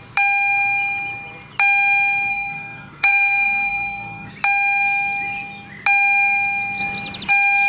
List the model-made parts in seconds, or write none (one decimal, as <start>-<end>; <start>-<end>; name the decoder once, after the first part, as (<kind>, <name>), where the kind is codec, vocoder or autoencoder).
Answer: 2.3-4.3 (codec, SNAC)